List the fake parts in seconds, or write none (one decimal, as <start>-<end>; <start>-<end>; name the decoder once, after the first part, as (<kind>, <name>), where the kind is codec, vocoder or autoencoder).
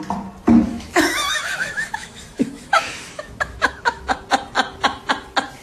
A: 0.7-4.1 (autoencoder, DAC-VAE)